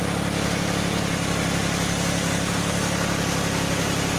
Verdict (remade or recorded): recorded